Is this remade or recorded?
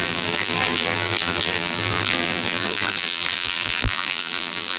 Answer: remade